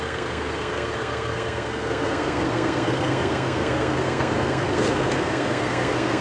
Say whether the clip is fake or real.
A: fake